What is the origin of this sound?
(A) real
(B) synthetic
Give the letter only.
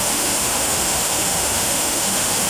B